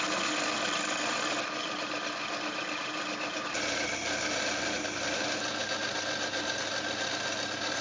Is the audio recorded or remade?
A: recorded